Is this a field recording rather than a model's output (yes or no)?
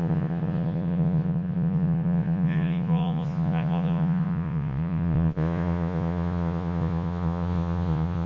no